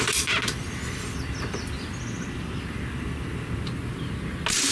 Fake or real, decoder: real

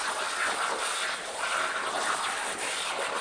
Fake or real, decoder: real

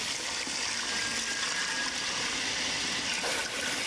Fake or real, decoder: real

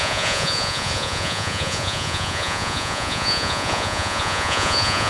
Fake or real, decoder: fake, vocoder, Vocos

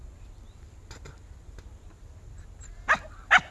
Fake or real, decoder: real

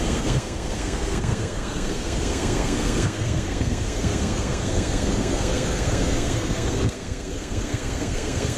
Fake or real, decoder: fake, codec, SNAC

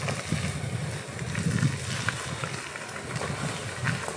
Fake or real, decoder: real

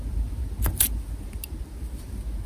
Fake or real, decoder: real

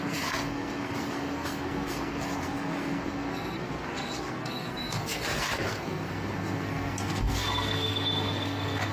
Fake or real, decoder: fake, codec, SNAC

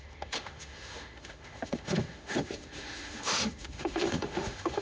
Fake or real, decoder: fake, autoencoder, DAC-VAE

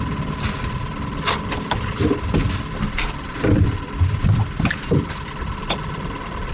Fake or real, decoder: real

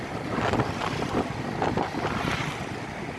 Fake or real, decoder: real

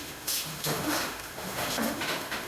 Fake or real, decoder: fake, autoencoder, DAC-VAE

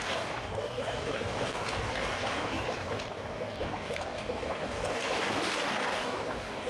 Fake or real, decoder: fake, codec, DAC